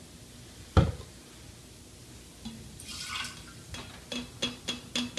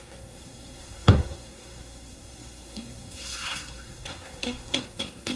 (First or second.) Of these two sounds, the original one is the first